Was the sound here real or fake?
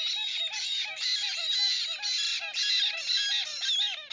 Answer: real